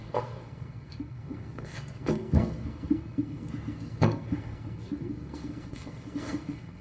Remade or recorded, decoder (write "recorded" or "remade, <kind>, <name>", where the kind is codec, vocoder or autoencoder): remade, codec, SNAC